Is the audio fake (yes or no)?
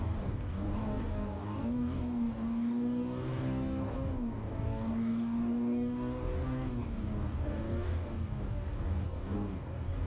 yes